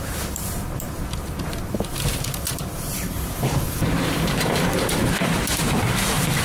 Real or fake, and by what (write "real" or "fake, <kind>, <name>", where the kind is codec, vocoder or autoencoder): fake, vocoder, BigVGAN v2